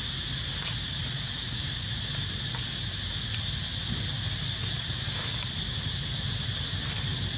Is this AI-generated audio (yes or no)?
no